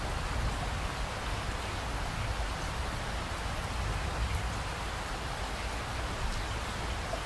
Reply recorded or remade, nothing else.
recorded